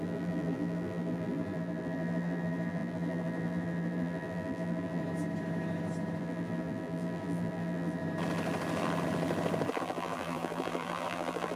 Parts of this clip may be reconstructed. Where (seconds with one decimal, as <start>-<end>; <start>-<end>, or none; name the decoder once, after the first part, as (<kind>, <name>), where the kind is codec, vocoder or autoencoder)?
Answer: 0.0-5.0 (vocoder, BigVGAN v2); 6.2-8.0; 9.8-11.6